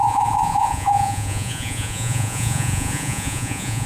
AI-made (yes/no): yes